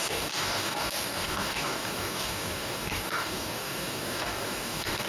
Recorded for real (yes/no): no